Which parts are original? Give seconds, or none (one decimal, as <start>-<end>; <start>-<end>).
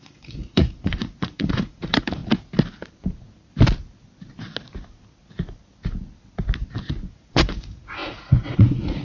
2.2-7.1